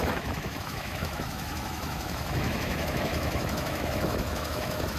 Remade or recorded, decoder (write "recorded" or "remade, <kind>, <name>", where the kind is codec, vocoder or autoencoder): remade, autoencoder, DAC-VAE